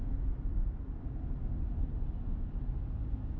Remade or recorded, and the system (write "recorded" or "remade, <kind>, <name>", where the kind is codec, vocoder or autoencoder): recorded